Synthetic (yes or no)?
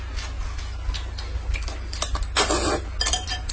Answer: no